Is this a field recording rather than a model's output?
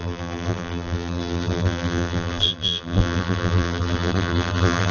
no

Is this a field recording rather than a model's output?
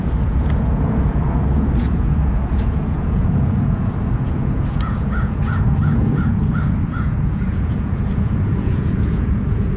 no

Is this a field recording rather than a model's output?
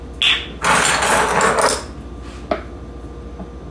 yes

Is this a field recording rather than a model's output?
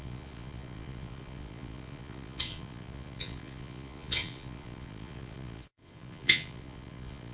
no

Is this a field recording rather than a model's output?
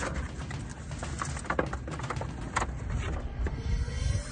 yes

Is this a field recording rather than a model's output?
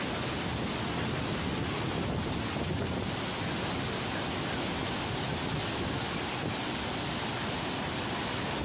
yes